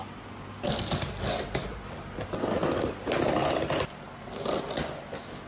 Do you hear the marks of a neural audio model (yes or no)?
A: no